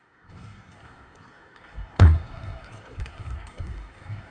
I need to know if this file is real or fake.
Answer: fake